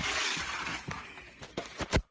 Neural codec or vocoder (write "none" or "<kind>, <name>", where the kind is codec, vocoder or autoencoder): none